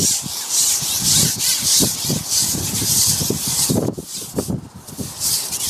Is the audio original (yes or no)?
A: no